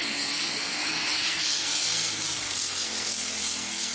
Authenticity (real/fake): fake